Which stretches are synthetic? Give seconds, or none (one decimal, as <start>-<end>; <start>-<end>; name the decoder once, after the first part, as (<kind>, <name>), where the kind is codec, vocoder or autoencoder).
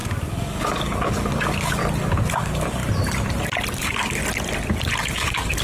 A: 0.0-1.8 (codec, DAC); 2.3-2.8; 3.8-4.2; 5.0-5.6